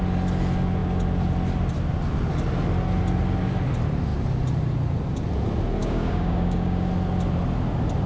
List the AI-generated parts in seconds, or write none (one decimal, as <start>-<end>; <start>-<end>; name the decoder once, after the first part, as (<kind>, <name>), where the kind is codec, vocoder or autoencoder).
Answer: 5.8-6.9 (codec, DAC)